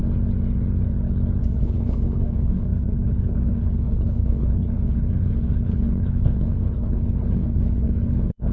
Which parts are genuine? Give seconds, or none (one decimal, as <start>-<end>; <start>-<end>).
0.0-1.4